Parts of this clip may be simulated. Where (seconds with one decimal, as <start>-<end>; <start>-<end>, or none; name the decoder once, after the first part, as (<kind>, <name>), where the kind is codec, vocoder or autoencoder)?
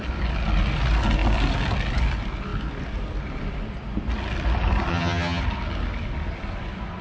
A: 4.9-5.4 (vocoder, HiFi-GAN)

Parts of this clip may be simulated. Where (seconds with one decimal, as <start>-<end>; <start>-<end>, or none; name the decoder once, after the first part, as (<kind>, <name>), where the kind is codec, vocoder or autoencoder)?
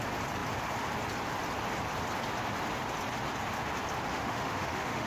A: 4.1-5.1 (autoencoder, DAC-VAE)